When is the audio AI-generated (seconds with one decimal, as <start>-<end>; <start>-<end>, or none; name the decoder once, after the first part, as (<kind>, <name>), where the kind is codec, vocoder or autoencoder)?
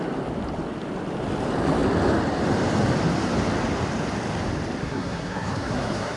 4.8-6.2 (codec, SNAC)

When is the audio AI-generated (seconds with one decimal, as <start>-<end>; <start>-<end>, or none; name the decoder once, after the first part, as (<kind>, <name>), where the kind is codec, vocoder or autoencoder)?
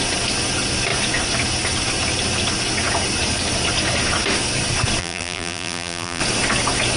5.0-6.2 (vocoder, BigVGAN v2)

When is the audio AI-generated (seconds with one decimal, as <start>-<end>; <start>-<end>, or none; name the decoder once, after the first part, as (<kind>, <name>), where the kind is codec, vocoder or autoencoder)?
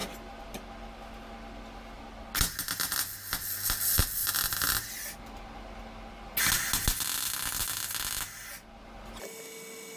4.2-4.9 (vocoder, BigVGAN v2)